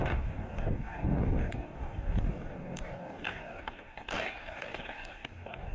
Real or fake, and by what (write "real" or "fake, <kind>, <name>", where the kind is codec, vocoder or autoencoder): fake, codec, DAC